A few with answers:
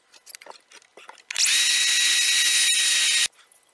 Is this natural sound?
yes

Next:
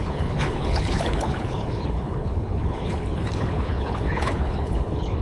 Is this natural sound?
no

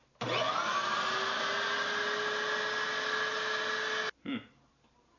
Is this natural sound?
yes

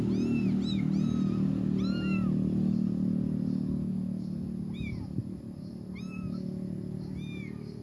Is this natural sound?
yes